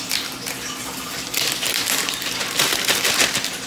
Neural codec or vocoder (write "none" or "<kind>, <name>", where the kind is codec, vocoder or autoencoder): vocoder, BigVGAN v2